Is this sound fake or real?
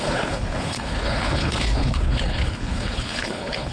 fake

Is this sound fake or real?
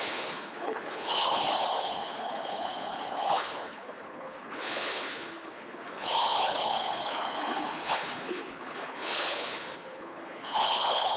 fake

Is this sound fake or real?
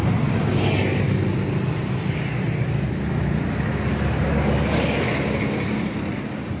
real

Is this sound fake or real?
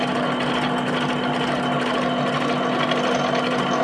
real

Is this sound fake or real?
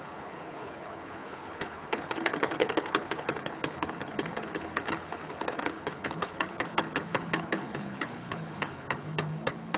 fake